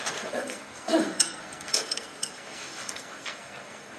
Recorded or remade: remade